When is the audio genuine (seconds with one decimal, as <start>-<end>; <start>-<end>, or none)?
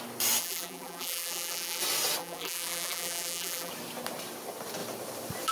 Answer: 0.0-0.4; 1.8-2.2; 3.7-5.5